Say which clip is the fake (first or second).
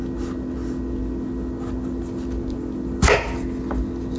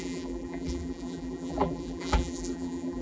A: second